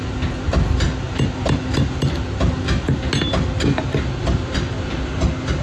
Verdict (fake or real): real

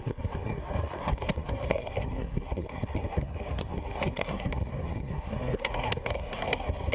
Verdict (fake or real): fake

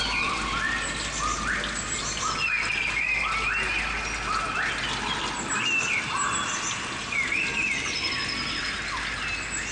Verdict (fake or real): real